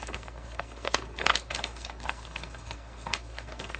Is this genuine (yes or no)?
no